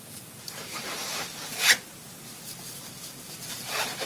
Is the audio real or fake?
fake